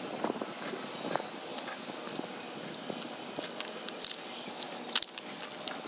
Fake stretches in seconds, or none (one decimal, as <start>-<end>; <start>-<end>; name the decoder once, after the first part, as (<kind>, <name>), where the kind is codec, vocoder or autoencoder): none